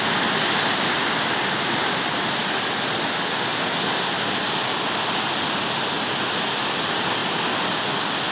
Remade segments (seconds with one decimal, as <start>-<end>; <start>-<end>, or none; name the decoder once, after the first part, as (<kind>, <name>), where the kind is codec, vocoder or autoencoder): none